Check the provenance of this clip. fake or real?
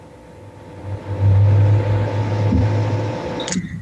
real